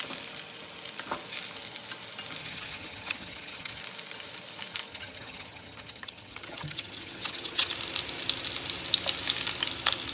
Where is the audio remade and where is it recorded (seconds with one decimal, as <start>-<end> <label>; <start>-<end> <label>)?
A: 0.0-2.4 recorded; 2.4-3.8 remade; 3.8-4.9 recorded; 4.9-7.7 remade; 7.7-10.1 recorded